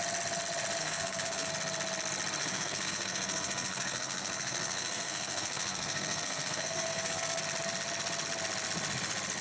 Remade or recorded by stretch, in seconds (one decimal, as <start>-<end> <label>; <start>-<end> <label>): 0.0-0.8 recorded; 0.8-1.5 remade; 1.5-2.4 recorded; 2.4-7.4 remade; 7.4-9.4 recorded